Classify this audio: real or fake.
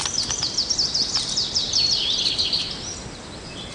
fake